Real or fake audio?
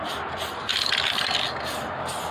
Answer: real